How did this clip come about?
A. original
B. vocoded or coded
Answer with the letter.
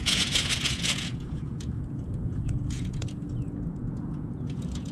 B